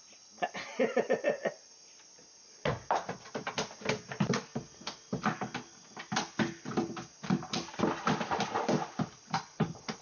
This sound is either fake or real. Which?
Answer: real